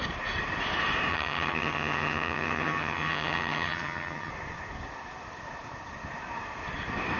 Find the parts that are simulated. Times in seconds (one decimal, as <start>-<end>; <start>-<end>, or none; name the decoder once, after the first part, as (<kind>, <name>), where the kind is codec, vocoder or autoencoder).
1.1-4.3 (vocoder, HiFi-GAN)